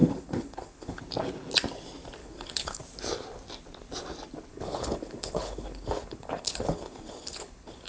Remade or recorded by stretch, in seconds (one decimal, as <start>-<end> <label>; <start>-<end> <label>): 0.0-1.0 remade; 1.0-2.2 recorded; 2.2-2.8 remade; 2.8-4.5 recorded; 4.5-7.9 remade